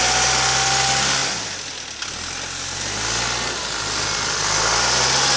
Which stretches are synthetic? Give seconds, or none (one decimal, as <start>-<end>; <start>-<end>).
none